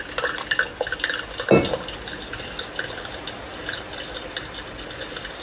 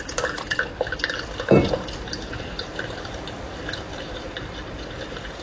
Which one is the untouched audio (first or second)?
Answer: first